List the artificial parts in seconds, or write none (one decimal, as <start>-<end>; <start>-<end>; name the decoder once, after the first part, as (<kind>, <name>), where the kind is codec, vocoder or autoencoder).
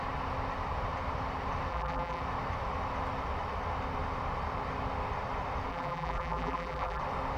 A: 1.7-2.2 (vocoder, BigVGAN v2); 5.7-7.0